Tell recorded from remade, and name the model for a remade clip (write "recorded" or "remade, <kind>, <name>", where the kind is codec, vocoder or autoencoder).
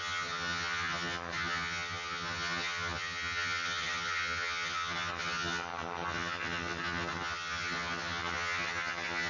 remade, vocoder, HiFi-GAN